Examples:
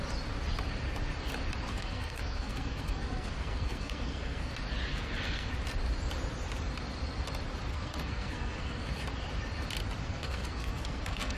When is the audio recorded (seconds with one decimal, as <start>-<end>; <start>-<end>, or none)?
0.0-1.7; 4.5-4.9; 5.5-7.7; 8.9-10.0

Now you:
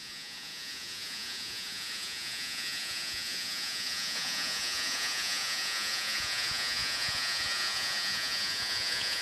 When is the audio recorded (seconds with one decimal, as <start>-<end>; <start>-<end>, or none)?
none

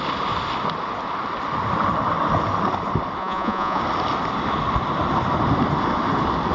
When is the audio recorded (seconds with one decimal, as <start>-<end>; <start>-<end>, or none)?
0.0-3.2; 3.8-6.5